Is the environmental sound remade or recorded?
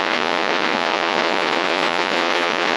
remade